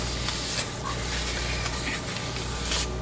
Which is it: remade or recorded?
recorded